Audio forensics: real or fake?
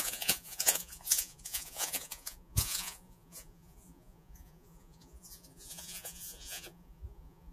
fake